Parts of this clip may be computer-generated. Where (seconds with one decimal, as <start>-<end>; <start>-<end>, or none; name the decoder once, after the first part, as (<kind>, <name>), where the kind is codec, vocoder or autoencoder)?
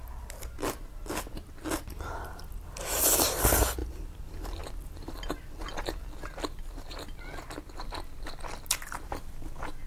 none